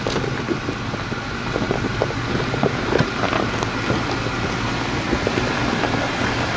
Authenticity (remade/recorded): recorded